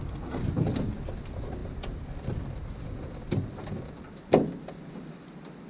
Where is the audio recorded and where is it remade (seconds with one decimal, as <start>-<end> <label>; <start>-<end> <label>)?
0.0-5.7 recorded